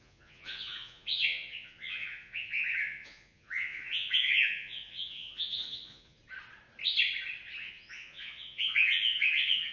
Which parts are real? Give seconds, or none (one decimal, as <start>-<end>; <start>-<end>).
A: 6.2-7.6